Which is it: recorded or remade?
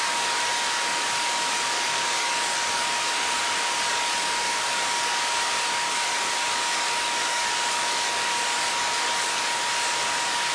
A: remade